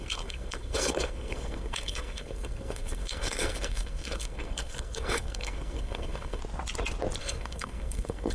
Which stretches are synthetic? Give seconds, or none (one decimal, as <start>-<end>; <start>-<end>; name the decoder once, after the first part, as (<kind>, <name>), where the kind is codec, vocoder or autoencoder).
0.0-6.4 (codec, SNAC); 7.2-8.3